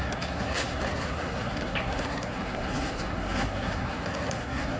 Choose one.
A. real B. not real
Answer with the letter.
B